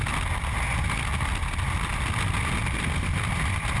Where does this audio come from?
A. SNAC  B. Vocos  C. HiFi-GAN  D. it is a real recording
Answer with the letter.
D